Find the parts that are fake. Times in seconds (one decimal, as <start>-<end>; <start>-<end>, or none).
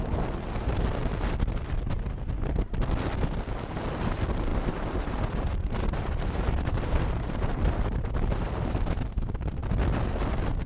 4.5-8.9